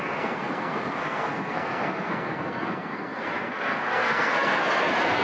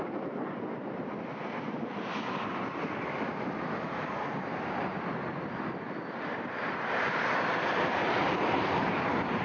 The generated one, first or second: first